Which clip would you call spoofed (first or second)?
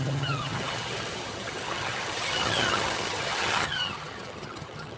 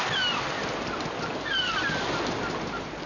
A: first